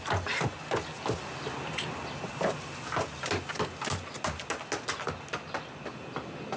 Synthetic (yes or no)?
no